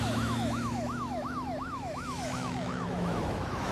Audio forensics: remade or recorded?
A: remade